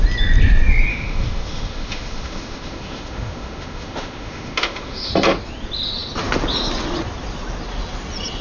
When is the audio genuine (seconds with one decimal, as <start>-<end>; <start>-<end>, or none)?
0.0-0.9; 5.1-8.4